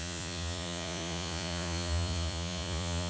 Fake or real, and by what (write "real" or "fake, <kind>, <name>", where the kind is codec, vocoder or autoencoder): fake, vocoder, Vocos